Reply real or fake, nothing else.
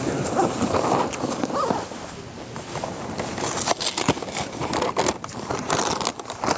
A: real